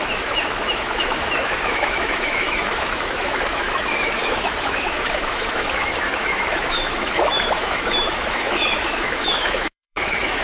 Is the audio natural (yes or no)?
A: no